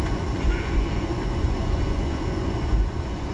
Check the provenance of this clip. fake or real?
fake